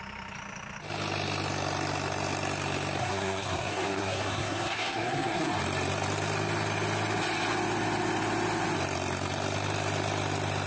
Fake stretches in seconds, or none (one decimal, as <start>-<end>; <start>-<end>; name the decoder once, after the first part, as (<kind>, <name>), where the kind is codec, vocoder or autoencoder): 3.0-5.5 (codec, SNAC)